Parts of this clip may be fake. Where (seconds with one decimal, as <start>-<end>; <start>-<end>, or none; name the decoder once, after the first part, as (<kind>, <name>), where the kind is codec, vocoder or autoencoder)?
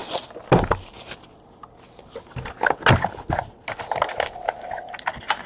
none